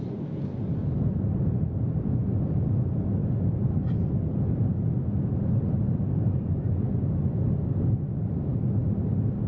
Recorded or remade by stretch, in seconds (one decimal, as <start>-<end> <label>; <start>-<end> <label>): 0.0-9.5 recorded